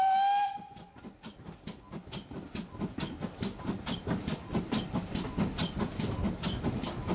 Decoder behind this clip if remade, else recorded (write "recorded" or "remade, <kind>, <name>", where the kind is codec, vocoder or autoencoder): recorded